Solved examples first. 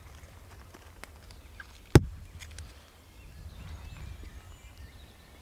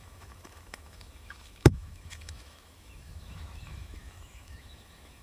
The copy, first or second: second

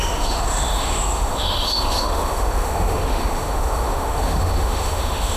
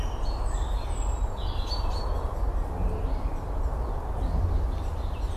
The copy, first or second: first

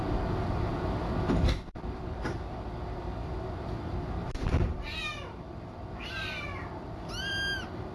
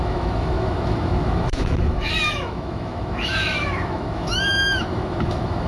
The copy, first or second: second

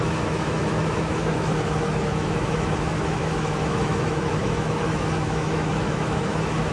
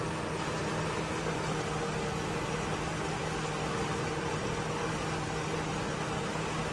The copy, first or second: first